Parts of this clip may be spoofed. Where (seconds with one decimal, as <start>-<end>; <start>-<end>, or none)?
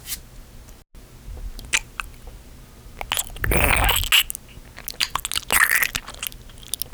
none